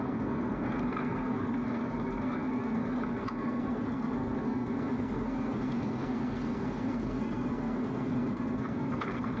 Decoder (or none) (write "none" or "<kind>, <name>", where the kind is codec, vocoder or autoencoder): codec, SNAC